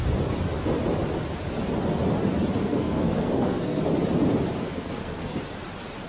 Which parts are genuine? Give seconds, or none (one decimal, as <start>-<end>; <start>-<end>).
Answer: 0.0-2.6; 3.8-4.6; 5.4-6.1